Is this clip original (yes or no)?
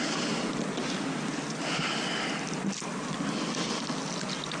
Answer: yes